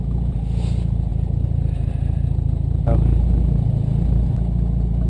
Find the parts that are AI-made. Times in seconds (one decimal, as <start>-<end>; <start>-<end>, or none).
1.1-2.8